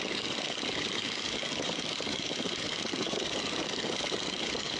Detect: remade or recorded remade